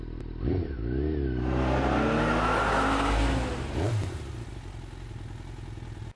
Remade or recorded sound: recorded